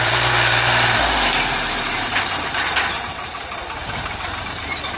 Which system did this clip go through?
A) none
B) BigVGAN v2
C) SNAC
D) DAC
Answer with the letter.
B